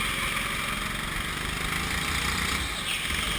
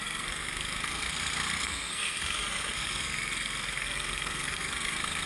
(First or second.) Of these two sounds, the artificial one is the second